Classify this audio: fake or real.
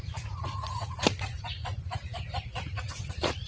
fake